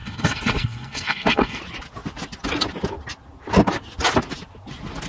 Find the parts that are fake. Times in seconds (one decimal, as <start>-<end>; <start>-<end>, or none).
0.0-1.6